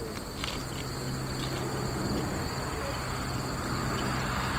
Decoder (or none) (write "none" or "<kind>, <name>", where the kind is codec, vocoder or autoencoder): none